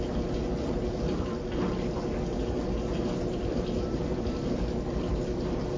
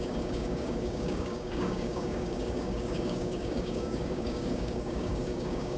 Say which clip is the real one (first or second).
first